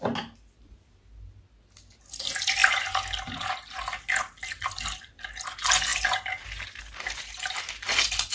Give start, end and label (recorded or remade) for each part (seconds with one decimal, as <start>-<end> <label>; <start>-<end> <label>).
0.0-8.3 recorded